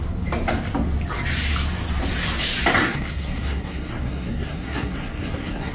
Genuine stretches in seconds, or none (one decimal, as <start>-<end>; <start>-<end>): 0.0-2.8